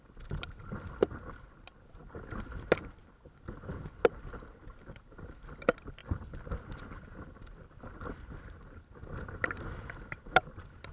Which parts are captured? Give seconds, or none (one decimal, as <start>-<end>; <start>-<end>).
0.0-10.9